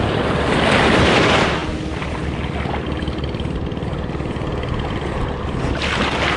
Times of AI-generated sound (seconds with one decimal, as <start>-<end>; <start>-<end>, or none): none